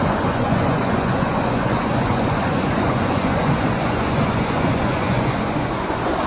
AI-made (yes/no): yes